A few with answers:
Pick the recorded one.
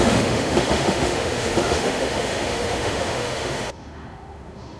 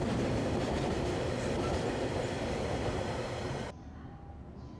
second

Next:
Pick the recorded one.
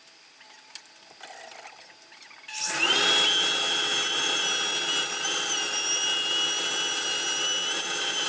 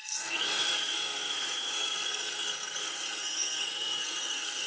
first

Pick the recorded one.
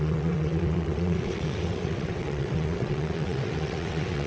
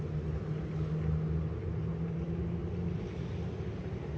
second